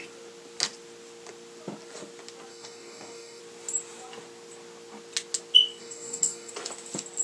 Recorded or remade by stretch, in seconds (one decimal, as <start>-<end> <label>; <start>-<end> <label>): 0.0-2.5 recorded; 2.5-3.4 remade; 3.4-5.8 recorded; 5.8-6.5 remade; 6.5-7.2 recorded